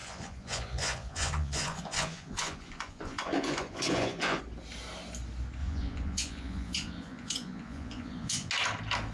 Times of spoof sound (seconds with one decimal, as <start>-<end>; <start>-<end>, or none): 0.0-4.4; 5.6-8.5